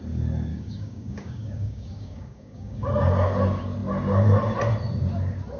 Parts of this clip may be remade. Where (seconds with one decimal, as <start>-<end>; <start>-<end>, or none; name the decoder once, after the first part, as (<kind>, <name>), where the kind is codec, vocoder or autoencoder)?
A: 0.5-2.9 (codec, DAC)